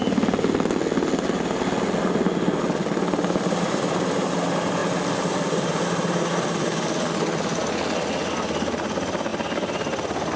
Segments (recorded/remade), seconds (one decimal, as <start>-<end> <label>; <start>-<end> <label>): 0.0-4.8 recorded; 4.8-7.1 remade; 7.1-10.4 recorded

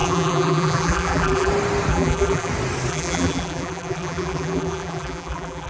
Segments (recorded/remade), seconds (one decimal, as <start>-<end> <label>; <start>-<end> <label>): 0.0-1.5 remade; 1.5-1.9 recorded; 1.9-2.5 remade; 2.5-2.9 recorded; 2.9-5.7 remade

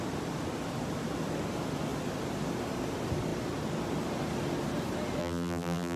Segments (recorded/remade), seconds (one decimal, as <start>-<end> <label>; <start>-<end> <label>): 0.0-5.2 recorded; 5.2-6.0 remade

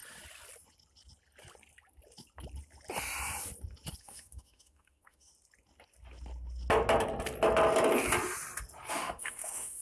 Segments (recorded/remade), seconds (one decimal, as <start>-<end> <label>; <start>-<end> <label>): 0.0-4.0 recorded; 4.0-5.3 remade; 5.3-8.9 recorded; 8.9-9.8 remade

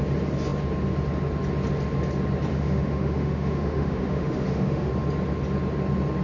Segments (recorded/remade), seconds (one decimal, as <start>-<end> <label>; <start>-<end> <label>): 0.0-2.5 recorded; 2.5-4.9 remade; 4.9-6.2 recorded

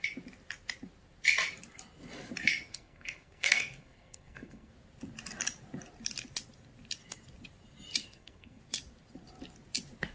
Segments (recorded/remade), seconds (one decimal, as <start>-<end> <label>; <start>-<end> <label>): 0.0-2.7 recorded; 2.7-4.7 remade; 4.7-8.0 recorded; 8.0-8.6 remade; 8.6-10.1 recorded